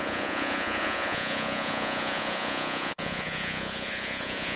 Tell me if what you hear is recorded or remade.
remade